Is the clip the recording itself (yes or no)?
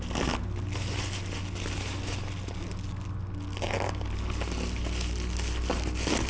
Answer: yes